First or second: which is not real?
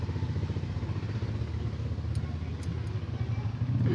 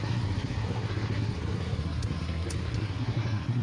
second